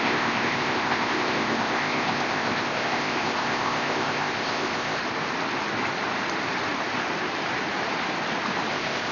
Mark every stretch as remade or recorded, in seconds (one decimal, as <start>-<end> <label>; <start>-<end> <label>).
0.0-5.0 remade; 5.0-8.7 recorded; 8.7-9.1 remade